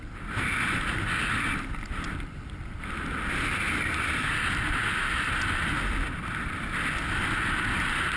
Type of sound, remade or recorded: recorded